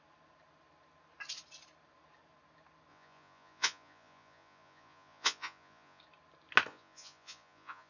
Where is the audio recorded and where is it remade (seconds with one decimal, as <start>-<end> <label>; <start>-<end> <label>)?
0.0-2.9 recorded; 2.9-6.0 remade; 6.0-6.7 recorded; 6.7-7.9 remade